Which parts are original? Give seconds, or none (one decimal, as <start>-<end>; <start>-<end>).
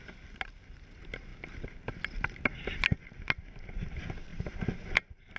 0.0-5.4